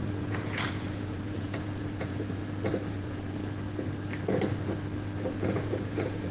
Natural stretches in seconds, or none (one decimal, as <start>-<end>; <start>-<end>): 2.4-2.9; 3.4-5.3